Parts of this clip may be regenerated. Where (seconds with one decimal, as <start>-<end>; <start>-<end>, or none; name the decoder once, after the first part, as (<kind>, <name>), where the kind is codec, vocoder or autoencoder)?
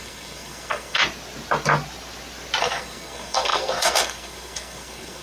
0.0-1.0 (codec, SNAC); 2.6-5.2